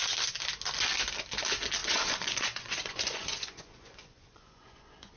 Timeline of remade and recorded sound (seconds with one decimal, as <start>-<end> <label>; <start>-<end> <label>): 0.0-1.8 recorded; 1.8-5.2 remade